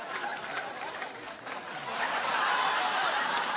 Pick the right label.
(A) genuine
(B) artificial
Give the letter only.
A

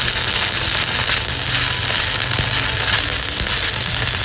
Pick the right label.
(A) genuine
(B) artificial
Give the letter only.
A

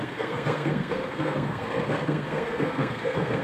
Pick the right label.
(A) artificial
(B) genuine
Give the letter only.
A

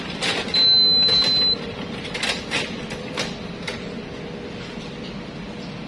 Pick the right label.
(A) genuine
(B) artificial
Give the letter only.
A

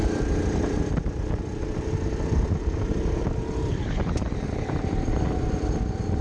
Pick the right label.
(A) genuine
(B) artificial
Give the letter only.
B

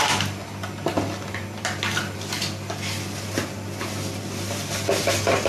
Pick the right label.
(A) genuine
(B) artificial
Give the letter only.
A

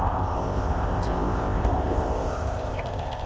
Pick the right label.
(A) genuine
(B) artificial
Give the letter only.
B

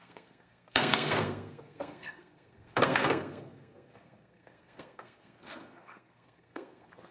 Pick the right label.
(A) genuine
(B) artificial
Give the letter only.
B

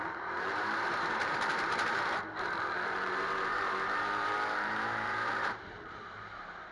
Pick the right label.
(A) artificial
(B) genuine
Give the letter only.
A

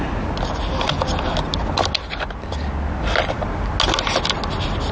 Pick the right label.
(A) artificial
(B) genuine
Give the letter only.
B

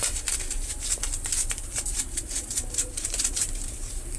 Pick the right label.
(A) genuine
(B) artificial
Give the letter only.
B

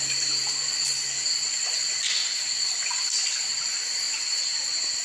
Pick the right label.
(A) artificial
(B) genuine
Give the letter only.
B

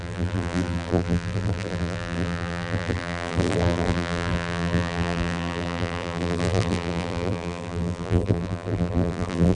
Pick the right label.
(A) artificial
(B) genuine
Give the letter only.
A